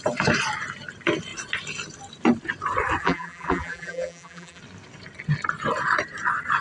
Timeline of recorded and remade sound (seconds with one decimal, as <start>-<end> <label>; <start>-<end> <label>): 0.0-3.0 recorded; 3.0-4.6 remade; 4.6-6.6 recorded